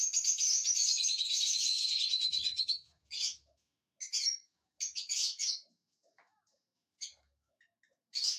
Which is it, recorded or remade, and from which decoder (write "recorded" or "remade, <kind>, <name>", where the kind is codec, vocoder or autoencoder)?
remade, autoencoder, DAC-VAE